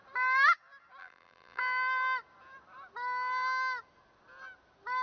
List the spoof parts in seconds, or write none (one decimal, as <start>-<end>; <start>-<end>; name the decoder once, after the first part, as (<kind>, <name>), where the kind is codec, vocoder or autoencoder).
1.0-1.6 (vocoder, BigVGAN v2)